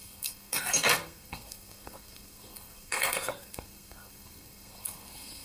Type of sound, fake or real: fake